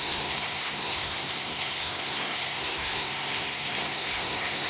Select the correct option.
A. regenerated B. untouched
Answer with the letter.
A